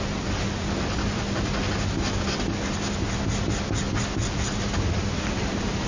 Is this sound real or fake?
real